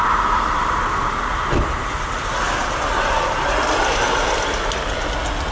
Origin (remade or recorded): recorded